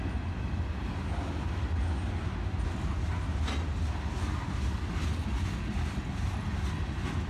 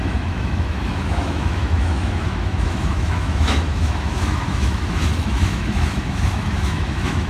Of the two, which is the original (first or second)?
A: first